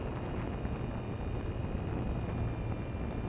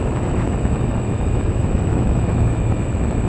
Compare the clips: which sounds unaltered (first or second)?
first